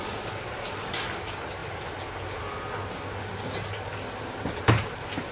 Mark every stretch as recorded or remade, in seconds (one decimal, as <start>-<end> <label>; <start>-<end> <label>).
0.0-1.6 remade; 1.6-4.3 recorded; 4.3-4.8 remade; 4.8-5.3 recorded